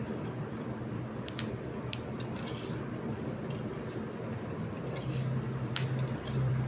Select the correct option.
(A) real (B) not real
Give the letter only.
B